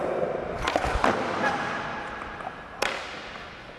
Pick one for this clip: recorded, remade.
recorded